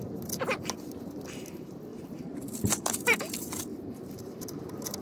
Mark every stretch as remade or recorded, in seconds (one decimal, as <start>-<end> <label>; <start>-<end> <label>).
0.0-1.9 recorded; 1.9-3.3 remade; 3.3-3.7 recorded; 3.7-5.0 remade